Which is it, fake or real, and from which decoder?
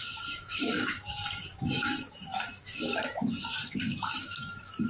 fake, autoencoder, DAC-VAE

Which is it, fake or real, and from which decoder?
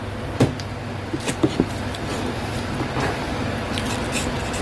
real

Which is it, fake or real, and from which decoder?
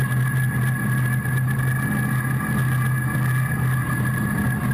real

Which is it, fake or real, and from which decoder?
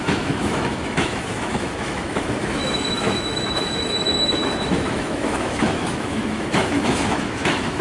fake, autoencoder, DAC-VAE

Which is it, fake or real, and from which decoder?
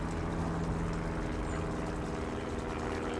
real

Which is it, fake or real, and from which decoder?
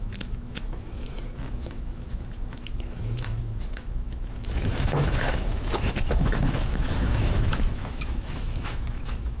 fake, autoencoder, DAC-VAE